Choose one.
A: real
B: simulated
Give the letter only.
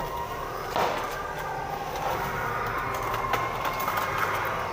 A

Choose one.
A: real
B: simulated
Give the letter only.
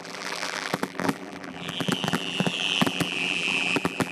B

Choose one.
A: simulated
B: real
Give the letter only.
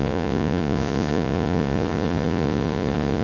A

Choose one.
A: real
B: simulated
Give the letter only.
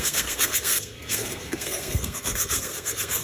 B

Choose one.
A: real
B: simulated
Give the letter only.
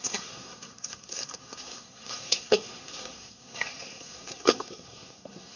B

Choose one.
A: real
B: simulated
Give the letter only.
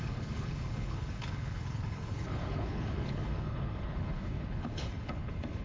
B